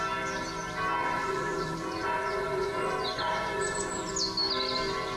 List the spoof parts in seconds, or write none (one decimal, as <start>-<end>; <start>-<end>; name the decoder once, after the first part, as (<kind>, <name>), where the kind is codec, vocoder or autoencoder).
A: 1.0-4.1 (vocoder, Vocos)